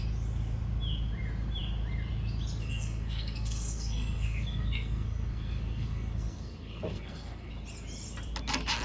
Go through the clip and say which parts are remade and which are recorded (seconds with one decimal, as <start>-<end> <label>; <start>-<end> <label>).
0.0-2.6 recorded; 2.6-7.5 remade; 7.5-8.8 recorded